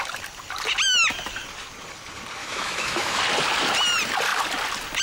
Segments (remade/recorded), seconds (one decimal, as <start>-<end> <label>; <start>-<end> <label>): 0.0-2.4 recorded; 2.4-3.2 remade; 3.2-5.0 recorded